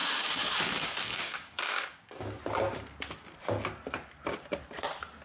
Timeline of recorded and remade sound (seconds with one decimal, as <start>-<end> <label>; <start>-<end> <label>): 0.0-2.4 remade; 2.4-5.2 recorded